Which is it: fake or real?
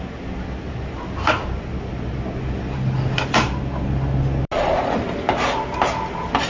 real